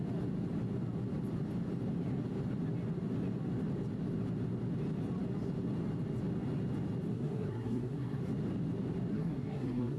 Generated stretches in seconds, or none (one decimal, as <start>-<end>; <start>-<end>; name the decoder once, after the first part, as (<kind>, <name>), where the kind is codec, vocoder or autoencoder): 7.1-8.2 (codec, SNAC); 9.1-10.0